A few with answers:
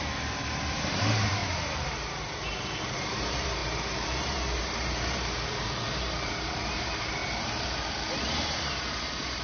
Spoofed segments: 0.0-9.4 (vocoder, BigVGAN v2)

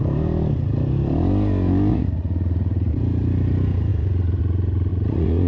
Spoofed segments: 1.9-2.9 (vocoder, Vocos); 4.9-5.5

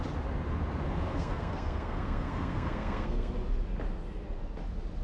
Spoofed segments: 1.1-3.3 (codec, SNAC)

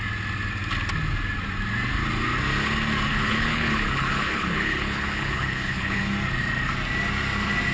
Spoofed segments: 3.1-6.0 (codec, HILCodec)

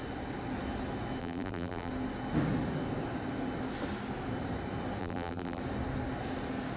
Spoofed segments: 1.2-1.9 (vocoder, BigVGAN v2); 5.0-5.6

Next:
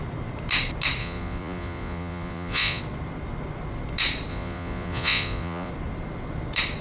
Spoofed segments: 1.0-2.8 (vocoder, Vocos); 4.3-5.7